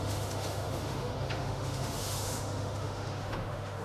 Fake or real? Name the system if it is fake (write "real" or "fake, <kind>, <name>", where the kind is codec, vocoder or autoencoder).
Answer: fake, autoencoder, DAC-VAE